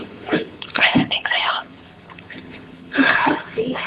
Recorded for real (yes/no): no